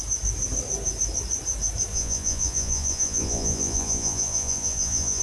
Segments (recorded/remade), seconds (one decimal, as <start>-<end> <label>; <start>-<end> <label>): 0.0-1.9 recorded; 1.9-5.2 remade